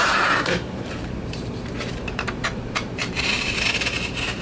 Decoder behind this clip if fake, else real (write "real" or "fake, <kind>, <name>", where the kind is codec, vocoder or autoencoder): fake, vocoder, BigVGAN v2